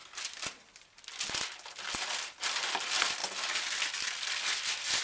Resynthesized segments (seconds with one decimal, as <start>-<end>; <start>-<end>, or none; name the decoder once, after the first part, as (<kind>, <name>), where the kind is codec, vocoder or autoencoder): none